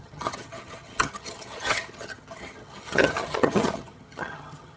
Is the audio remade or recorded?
remade